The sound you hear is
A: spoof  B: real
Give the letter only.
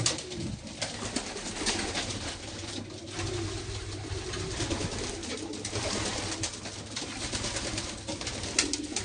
B